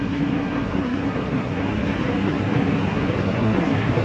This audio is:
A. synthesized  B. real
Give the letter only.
A